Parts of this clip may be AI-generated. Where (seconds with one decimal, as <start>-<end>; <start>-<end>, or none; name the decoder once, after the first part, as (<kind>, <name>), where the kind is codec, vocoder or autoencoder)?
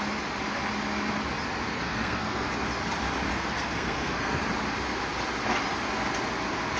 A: 1.7-2.5 (codec, SNAC); 3.3-4.4